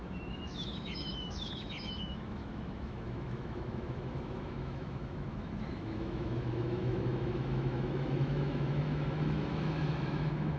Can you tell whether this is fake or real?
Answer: fake